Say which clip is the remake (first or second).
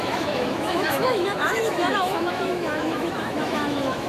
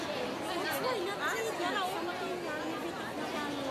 first